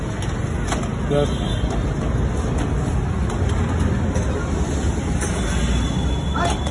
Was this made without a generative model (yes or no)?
yes